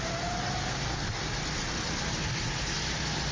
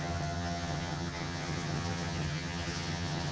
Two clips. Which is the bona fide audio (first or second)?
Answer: first